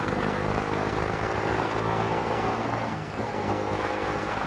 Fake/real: fake